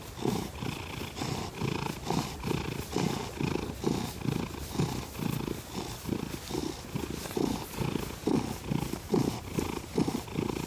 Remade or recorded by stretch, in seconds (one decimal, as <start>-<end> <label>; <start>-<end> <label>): 0.0-10.7 recorded